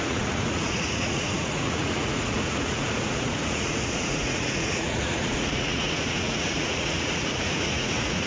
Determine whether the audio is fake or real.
fake